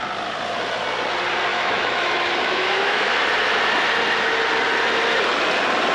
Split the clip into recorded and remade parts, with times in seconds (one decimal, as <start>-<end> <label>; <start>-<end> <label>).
0.0-1.5 recorded; 1.5-3.1 remade; 3.1-5.9 recorded